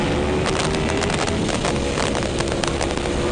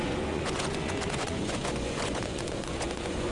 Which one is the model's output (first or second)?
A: second